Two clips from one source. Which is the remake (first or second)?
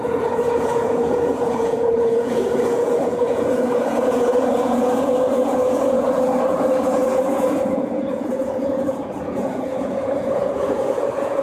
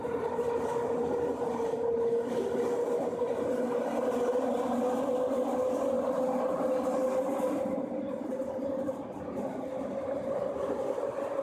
first